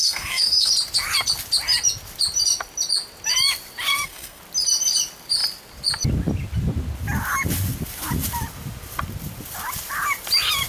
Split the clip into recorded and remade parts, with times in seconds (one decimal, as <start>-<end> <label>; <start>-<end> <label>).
0.0-0.7 remade; 0.7-3.9 recorded; 3.9-4.4 remade; 4.4-10.7 recorded